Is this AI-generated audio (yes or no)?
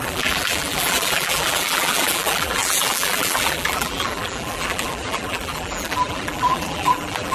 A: yes